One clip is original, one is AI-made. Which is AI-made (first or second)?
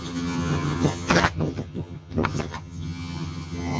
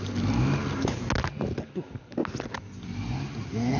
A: first